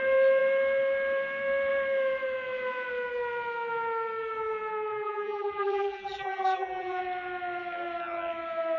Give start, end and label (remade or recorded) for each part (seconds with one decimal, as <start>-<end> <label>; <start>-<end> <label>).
0.0-4.9 recorded; 4.9-7.0 remade; 7.0-8.8 recorded